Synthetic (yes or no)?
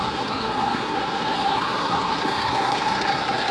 yes